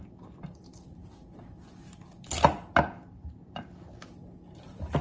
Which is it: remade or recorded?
recorded